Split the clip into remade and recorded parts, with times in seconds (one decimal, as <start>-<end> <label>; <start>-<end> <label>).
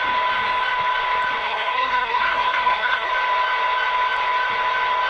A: 0.0-1.4 recorded; 1.4-3.1 remade; 3.1-5.1 recorded